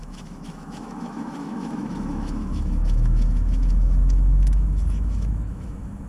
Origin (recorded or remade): remade